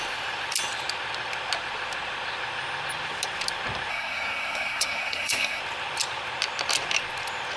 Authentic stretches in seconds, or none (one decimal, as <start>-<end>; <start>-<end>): 0.0-3.9; 5.6-7.6